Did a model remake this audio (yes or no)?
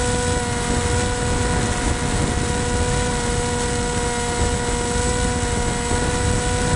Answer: no